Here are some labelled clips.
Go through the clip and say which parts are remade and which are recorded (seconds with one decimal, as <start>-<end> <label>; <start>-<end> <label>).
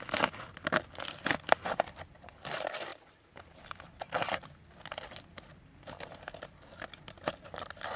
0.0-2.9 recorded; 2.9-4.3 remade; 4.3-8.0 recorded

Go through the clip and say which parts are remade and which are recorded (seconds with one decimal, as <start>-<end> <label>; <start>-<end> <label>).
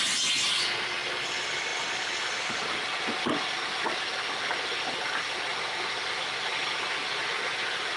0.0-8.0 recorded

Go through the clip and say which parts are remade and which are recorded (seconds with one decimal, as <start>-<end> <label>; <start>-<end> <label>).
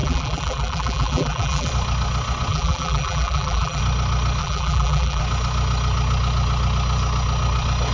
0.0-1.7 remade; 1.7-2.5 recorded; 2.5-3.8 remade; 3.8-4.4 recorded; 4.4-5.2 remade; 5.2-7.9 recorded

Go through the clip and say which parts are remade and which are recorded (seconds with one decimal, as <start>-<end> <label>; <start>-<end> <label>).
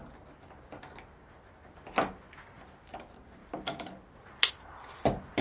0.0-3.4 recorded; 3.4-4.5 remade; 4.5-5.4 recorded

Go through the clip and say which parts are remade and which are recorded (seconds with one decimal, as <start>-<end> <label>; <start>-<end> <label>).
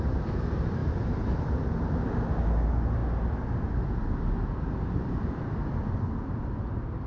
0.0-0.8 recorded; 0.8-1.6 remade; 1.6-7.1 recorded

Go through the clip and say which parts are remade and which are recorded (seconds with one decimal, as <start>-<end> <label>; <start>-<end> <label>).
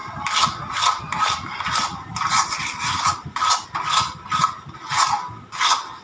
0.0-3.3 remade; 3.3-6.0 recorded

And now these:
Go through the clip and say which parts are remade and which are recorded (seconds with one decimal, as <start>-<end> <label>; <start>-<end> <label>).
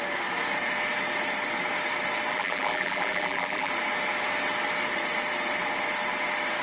0.0-2.3 recorded; 2.3-3.7 remade; 3.7-6.6 recorded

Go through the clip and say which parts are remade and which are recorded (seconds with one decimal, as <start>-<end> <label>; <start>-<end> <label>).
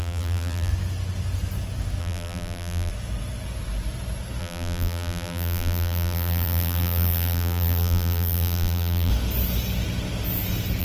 0.0-0.7 remade; 0.7-2.0 recorded; 2.0-2.9 remade; 2.9-4.4 recorded; 4.4-9.1 remade; 9.1-10.8 recorded